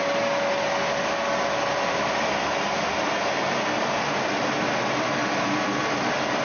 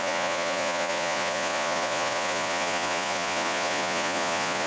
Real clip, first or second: first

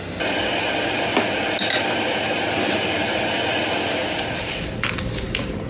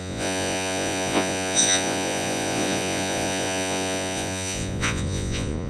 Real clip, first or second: first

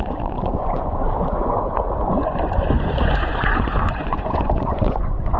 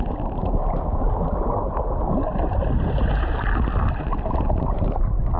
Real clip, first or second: second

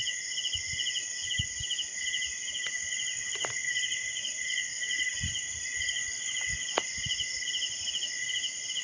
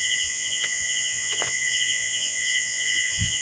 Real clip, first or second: first